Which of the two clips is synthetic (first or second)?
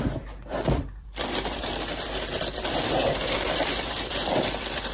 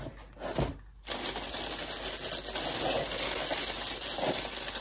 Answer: first